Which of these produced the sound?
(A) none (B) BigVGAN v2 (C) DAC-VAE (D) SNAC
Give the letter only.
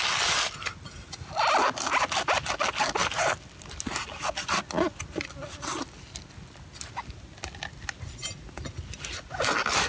A